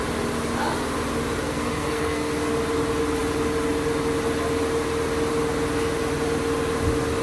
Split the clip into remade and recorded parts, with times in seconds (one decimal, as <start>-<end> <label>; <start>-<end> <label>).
0.0-1.4 recorded; 1.4-2.3 remade; 2.3-7.2 recorded